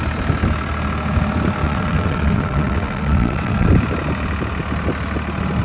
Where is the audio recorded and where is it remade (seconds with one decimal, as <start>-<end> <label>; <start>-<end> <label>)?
0.0-1.6 recorded; 1.6-3.7 remade; 3.7-5.6 recorded